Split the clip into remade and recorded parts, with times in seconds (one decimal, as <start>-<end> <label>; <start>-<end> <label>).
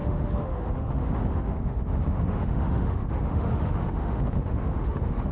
0.0-5.3 remade